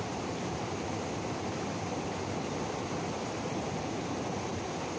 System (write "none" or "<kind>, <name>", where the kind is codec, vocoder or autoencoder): vocoder, BigVGAN v2